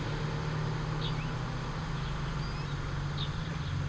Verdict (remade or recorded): recorded